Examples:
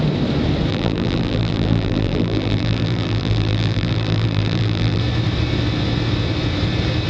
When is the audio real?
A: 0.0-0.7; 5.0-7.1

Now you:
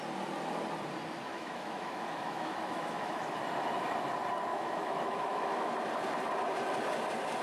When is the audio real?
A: 0.0-1.3; 3.4-4.5; 5.7-7.4

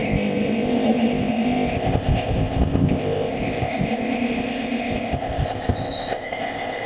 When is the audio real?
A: none

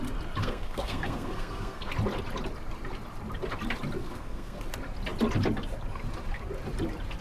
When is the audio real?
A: 0.0-0.4; 1.9-4.0; 4.6-7.2

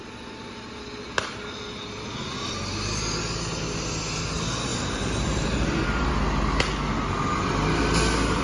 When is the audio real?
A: 0.0-4.7; 6.1-8.4